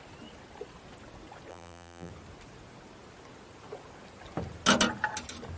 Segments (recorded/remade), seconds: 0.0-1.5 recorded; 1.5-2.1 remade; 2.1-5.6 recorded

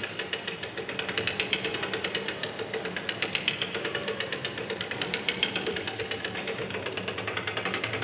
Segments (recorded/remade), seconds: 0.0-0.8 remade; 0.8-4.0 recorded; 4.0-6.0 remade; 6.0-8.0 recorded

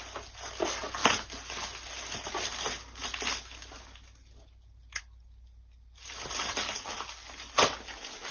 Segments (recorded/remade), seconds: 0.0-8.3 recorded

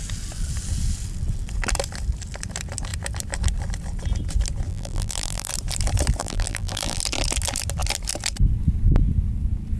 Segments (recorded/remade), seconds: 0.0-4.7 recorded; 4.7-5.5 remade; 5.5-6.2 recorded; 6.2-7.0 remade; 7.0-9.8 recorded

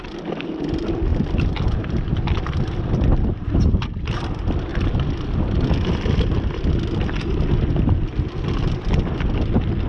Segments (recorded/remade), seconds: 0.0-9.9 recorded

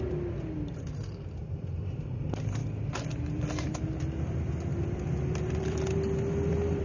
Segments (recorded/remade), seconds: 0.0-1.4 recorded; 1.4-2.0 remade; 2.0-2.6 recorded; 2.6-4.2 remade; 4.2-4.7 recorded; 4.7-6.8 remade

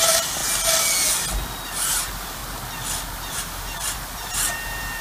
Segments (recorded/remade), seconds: 0.0-0.4 remade; 0.4-1.9 recorded; 1.9-2.4 remade; 2.4-3.3 recorded; 3.3-5.0 remade